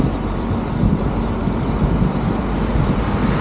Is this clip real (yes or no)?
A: no